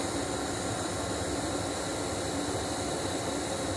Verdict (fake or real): real